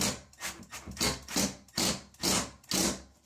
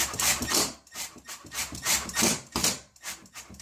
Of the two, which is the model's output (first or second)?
second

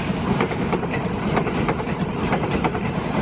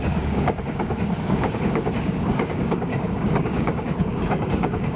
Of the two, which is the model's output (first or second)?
second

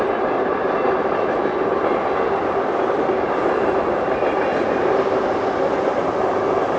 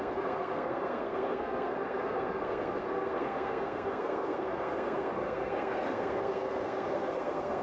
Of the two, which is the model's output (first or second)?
second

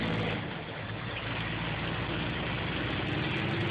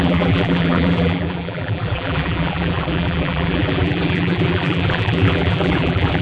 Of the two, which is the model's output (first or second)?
second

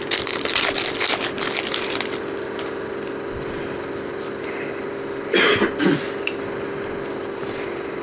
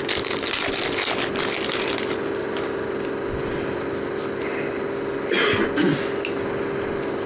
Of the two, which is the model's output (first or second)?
first